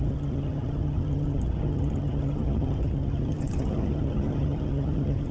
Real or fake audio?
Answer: fake